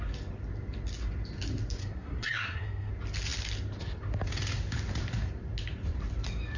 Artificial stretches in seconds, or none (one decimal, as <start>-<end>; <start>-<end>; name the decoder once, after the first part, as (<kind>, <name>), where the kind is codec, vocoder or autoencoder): 1.8-2.9 (codec, SNAC)